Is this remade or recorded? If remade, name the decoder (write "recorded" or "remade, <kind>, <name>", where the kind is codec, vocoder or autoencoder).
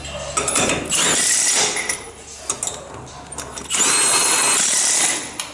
recorded